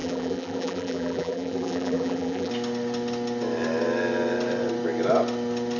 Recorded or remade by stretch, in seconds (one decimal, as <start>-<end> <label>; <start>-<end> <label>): 0.0-2.5 remade; 2.5-5.8 recorded